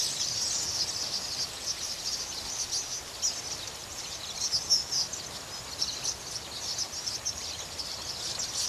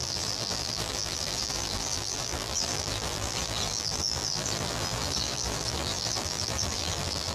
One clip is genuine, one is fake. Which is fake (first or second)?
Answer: second